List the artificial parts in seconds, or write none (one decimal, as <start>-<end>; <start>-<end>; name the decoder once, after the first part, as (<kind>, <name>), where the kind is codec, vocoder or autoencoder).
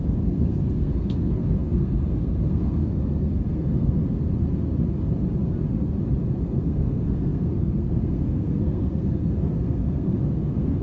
0.0-4.0 (codec, SNAC); 6.4-10.8